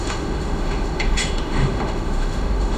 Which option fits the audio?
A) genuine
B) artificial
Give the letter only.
B